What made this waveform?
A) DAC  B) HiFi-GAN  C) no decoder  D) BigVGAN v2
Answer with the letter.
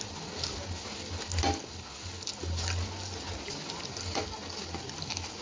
C